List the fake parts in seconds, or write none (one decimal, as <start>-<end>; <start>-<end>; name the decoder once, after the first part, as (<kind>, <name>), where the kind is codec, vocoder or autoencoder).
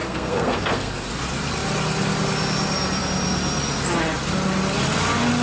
0.0-0.9 (codec, SNAC)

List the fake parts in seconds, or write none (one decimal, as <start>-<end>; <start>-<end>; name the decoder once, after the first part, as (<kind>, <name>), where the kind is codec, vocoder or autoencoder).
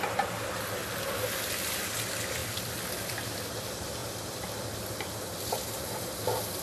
2.4-3.5 (vocoder, BigVGAN v2); 4.0-6.0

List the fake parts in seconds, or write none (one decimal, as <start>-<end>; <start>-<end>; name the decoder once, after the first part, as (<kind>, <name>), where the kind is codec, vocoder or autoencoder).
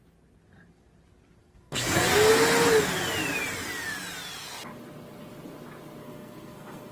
1.4-2.3 (codec, SNAC); 6.0-6.9